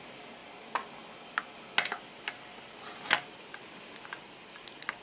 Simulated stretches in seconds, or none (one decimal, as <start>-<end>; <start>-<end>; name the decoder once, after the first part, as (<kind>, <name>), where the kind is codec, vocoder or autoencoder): none